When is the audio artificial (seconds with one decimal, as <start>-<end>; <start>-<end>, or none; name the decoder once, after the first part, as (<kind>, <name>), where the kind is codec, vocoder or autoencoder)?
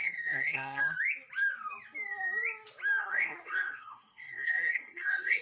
0.0-0.8 (codec, SNAC); 3.0-5.4